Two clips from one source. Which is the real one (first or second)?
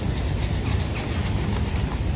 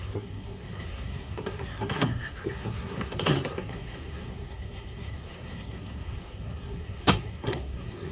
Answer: first